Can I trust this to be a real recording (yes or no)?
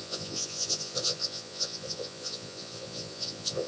no